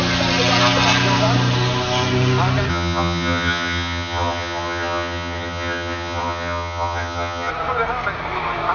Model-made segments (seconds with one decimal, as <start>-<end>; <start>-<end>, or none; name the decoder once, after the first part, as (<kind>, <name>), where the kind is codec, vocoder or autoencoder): 2.7-7.5 (vocoder, HiFi-GAN)